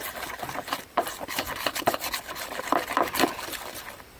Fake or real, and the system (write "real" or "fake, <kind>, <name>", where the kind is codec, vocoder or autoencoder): real